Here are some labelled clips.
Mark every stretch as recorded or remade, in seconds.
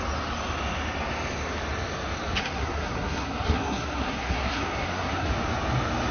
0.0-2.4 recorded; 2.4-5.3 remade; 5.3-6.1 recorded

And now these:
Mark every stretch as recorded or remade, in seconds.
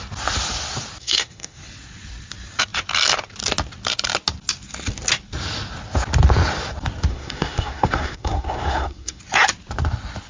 0.0-1.0 recorded; 1.0-1.6 remade; 1.6-7.1 recorded; 7.1-9.2 remade; 9.2-10.3 recorded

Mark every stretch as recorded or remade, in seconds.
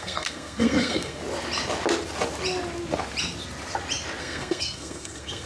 0.0-1.2 remade; 1.2-4.2 recorded; 4.2-5.5 remade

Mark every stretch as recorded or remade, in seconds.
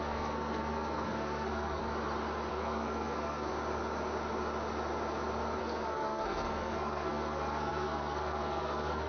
0.0-1.8 remade; 1.8-2.5 recorded; 2.5-3.5 remade; 3.5-5.6 recorded; 5.6-9.1 remade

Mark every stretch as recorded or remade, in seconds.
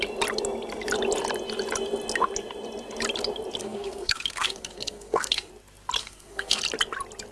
0.0-3.6 recorded; 3.6-5.5 remade; 5.5-6.0 recorded; 6.0-6.6 remade; 6.6-7.3 recorded